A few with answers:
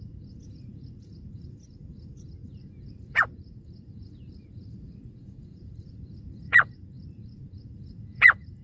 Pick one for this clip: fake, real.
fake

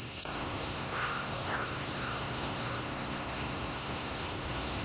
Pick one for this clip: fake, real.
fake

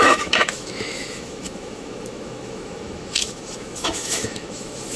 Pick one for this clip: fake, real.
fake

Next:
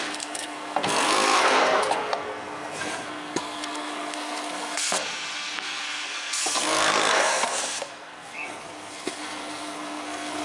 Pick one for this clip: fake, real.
fake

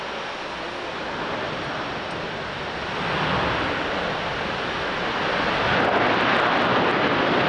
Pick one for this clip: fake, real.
real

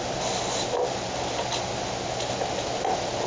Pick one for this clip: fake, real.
real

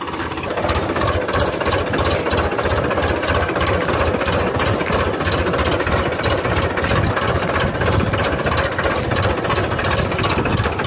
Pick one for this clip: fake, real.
real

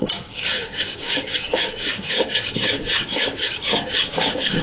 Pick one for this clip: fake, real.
fake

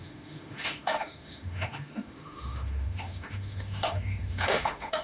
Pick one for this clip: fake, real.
fake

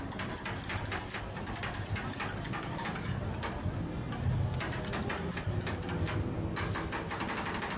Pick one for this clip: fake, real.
real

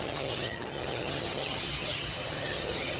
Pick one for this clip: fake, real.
fake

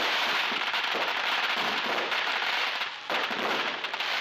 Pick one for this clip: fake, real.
real